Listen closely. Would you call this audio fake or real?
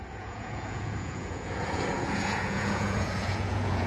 fake